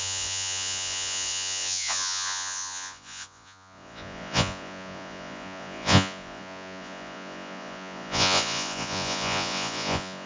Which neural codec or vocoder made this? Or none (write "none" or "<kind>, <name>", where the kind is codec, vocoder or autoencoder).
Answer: vocoder, Vocos